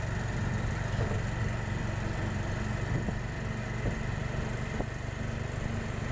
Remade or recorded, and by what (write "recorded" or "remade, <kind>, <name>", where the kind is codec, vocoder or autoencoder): recorded